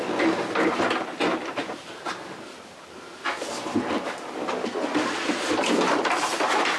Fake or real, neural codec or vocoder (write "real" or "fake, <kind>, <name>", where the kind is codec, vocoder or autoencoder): real